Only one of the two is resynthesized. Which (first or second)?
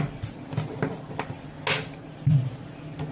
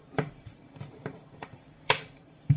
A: second